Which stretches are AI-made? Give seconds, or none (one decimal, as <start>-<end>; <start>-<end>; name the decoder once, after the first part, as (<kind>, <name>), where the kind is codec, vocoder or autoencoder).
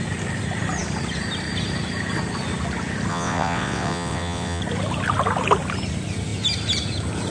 3.1-4.6 (vocoder, WaveNeXt)